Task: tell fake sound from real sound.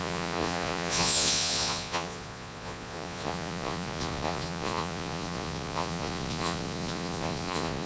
fake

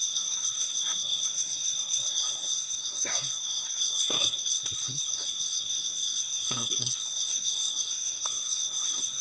fake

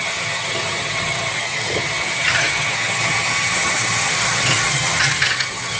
fake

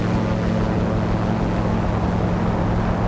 real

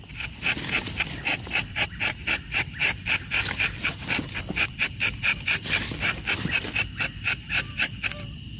real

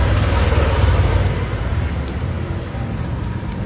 fake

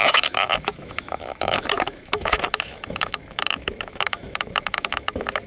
fake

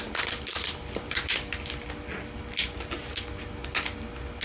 real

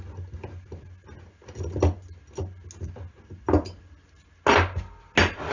real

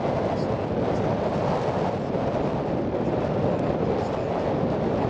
real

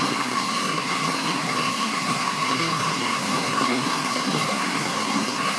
fake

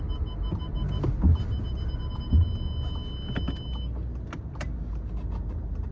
real